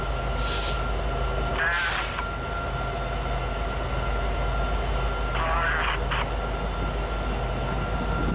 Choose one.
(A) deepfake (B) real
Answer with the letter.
B